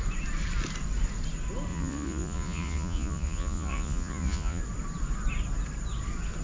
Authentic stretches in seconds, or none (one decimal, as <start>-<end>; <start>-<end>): 0.0-1.7; 4.6-6.4

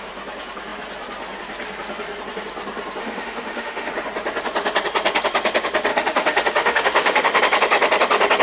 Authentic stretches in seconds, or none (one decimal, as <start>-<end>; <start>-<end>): 0.0-3.0; 3.9-5.9; 7.4-8.4

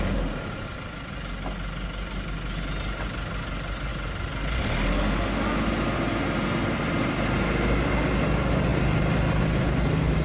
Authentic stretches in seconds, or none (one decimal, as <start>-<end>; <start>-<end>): 0.0-10.2

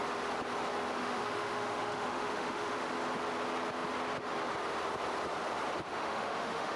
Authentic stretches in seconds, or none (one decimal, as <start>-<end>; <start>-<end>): 0.0-1.0; 2.9-5.9

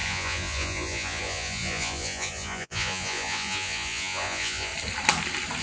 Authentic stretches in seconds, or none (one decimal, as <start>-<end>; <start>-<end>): 4.7-5.6

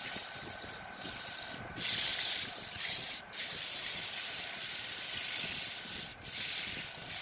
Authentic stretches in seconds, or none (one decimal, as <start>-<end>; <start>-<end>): 0.0-2.1; 5.0-7.2